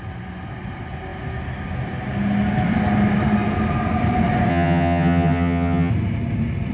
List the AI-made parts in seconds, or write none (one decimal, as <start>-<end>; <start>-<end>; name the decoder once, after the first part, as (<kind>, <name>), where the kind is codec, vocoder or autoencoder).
4.5-5.9 (vocoder, HiFi-GAN)